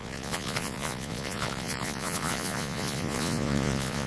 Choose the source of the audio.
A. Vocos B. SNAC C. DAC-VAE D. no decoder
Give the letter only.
A